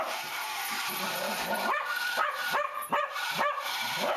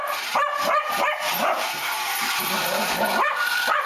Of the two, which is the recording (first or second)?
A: second